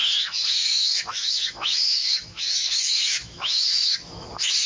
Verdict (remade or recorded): remade